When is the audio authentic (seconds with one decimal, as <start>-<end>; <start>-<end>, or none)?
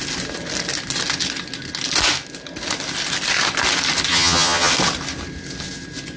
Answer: 0.0-4.1; 4.7-6.2